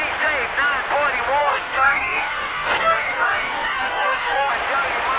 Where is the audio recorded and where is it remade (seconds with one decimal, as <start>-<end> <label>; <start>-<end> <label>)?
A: 0.0-1.4 recorded; 1.4-4.5 remade; 4.5-5.2 recorded